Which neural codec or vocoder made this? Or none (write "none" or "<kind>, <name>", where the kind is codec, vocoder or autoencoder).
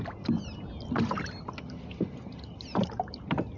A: none